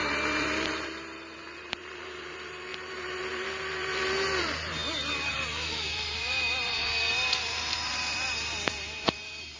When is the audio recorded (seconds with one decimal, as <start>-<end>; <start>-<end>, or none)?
none